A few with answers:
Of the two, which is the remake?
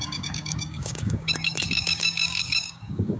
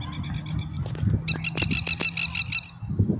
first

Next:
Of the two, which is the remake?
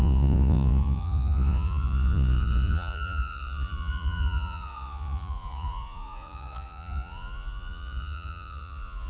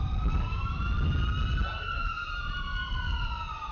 first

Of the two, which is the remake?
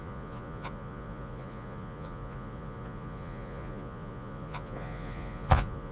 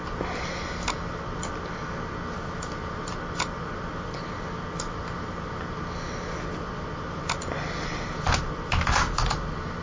first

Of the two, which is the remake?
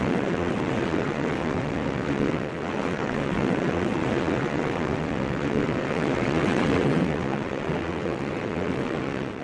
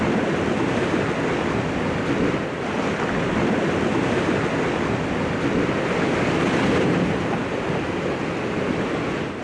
first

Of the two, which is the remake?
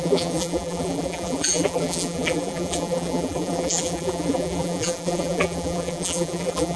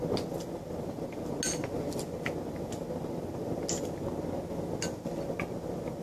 first